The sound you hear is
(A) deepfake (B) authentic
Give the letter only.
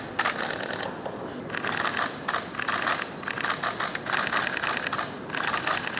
B